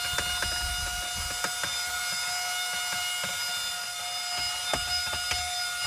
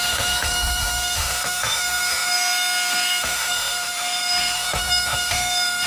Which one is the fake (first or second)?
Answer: second